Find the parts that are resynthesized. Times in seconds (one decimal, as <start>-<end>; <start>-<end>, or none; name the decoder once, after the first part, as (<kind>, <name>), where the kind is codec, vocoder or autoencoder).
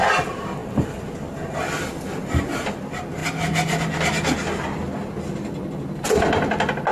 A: none